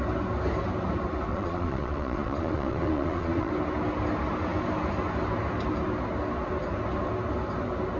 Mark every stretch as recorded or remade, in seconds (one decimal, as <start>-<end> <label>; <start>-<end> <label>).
0.0-1.3 recorded; 1.3-3.5 remade; 3.5-8.0 recorded